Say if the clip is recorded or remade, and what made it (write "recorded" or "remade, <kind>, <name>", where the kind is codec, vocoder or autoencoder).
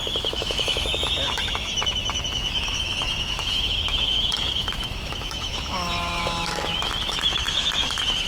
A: remade, autoencoder, DAC-VAE